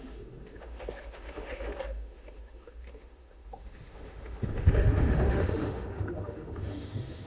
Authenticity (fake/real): fake